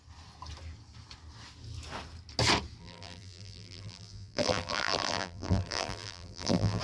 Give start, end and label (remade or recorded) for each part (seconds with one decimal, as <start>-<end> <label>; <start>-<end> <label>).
0.0-2.8 recorded; 2.8-6.8 remade